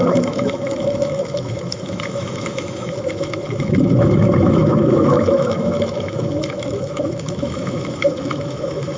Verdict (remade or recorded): remade